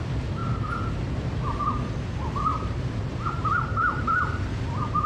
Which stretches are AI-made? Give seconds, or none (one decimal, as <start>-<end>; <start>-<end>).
2.5-3.8